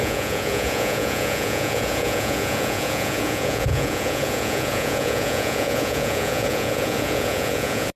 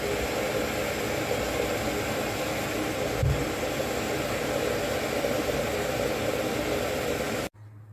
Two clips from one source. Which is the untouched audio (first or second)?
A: second